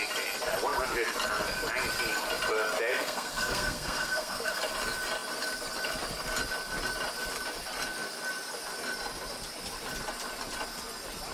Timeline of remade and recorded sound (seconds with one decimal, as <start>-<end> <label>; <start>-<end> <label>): 0.0-2.9 recorded; 2.9-4.6 remade; 4.6-11.3 recorded